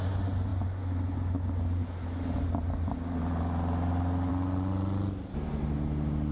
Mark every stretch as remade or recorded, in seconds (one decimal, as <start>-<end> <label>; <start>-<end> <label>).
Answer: 0.0-6.3 recorded